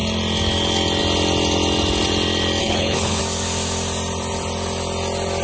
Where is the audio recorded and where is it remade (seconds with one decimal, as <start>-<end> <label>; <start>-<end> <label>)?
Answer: 0.0-2.6 recorded; 2.6-3.2 remade; 3.2-5.4 recorded